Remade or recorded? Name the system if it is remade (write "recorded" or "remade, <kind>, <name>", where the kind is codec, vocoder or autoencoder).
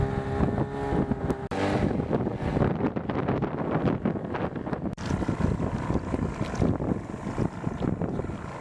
recorded